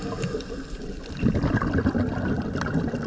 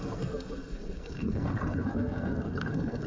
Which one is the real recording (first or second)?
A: first